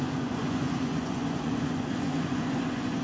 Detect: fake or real fake